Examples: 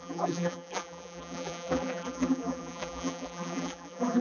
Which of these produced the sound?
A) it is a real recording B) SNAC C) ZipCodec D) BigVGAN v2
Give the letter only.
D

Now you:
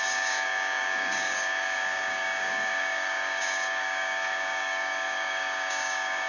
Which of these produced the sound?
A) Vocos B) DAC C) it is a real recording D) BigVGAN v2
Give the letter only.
B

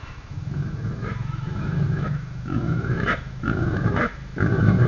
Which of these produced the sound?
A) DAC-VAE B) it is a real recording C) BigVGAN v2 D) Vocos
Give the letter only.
A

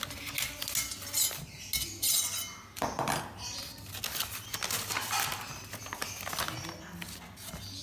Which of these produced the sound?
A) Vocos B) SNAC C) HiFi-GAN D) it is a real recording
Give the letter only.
D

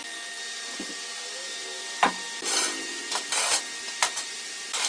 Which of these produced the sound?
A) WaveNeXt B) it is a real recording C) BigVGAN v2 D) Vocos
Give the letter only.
B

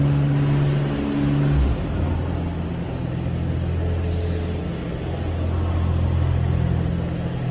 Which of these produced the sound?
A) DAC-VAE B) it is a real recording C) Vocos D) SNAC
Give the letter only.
B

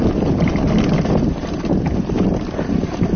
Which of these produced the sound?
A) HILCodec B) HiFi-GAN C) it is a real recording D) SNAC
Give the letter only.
C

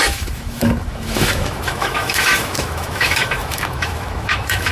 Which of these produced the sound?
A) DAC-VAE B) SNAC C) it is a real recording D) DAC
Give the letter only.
A